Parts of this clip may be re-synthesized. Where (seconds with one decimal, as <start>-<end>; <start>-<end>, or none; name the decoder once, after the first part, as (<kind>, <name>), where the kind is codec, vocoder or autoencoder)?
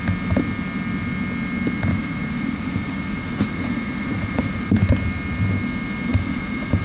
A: 1.9-4.6 (vocoder, Vocos); 6.1-6.8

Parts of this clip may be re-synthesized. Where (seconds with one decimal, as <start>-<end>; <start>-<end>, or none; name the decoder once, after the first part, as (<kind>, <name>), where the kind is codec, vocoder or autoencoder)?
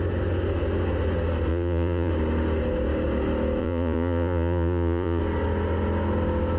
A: 1.5-2.1 (vocoder, Vocos); 3.6-5.2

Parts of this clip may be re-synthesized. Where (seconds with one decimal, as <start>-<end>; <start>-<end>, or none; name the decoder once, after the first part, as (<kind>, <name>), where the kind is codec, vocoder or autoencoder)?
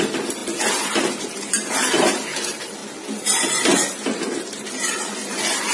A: 0.0-0.4 (vocoder, BigVGAN v2); 1.2-2.8; 4.7-5.7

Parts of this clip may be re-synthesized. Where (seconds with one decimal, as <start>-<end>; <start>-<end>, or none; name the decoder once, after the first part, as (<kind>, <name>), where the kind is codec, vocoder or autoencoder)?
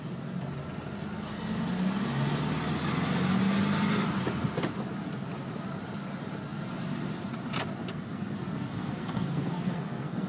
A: 7.9-10.3 (codec, SNAC)